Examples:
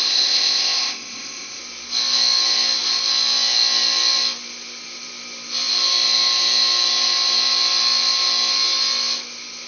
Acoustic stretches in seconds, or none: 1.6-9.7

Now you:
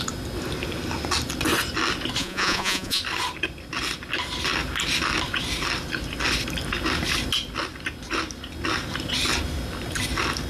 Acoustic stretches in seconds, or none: 0.0-2.2; 3.0-10.5

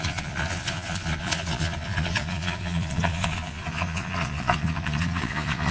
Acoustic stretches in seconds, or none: none

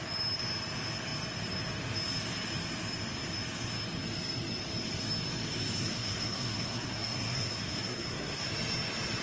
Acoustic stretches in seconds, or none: 0.0-5.8; 8.5-9.2